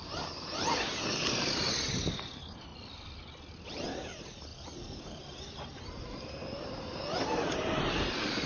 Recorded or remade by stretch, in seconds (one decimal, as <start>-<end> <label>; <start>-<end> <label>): 0.0-2.7 remade; 2.7-3.6 recorded; 3.6-8.5 remade